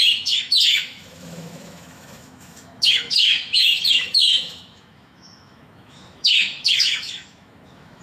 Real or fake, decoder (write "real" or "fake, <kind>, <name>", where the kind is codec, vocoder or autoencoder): fake, autoencoder, DAC-VAE